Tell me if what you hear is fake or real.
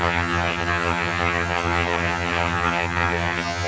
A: fake